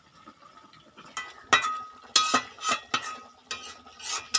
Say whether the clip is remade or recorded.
recorded